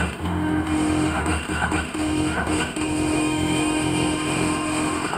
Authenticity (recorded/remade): remade